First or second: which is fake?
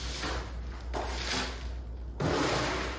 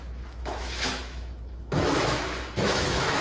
second